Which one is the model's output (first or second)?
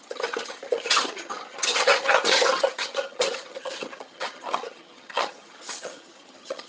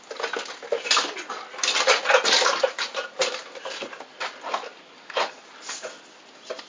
first